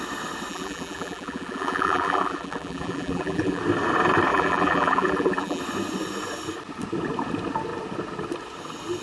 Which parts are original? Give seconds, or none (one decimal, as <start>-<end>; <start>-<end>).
0.0-0.5; 3.6-4.3; 5.6-9.0

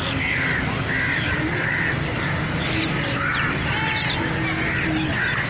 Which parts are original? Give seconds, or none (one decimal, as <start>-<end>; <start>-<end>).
0.0-1.1; 4.1-5.5

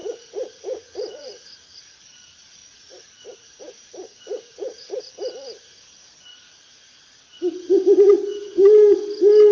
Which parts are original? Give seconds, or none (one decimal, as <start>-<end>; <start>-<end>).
1.8-2.6; 5.0-6.3; 7.5-9.5

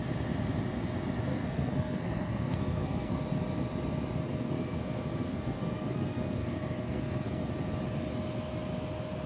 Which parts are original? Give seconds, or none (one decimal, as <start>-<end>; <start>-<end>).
0.0-1.3; 3.2-4.2; 7.5-9.3

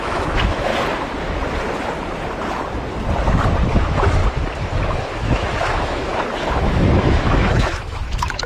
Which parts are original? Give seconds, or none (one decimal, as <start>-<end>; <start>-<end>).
0.7-3.7; 4.2-5.1; 6.1-6.6

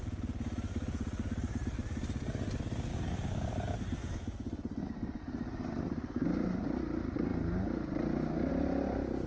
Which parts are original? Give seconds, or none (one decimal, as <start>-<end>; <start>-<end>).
0.0-2.9; 3.5-9.3

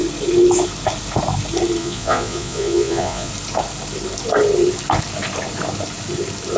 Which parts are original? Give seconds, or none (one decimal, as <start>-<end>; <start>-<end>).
0.0-1.8; 3.3-6.6